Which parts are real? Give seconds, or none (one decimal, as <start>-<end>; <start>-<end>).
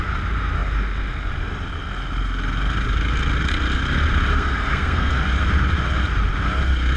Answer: 0.0-4.3; 5.2-7.0